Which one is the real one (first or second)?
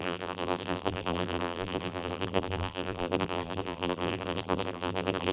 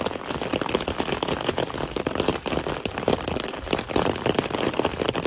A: second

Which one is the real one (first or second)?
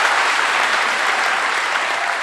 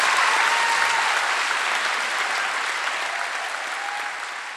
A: second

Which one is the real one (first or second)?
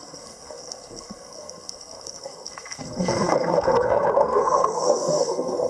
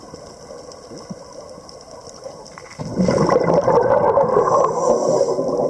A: second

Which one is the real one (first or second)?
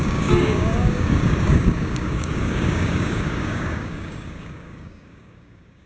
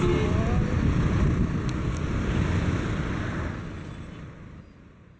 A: second